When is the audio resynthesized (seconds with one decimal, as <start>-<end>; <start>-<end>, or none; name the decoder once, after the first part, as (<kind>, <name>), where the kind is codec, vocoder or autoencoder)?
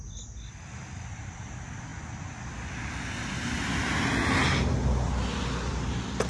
none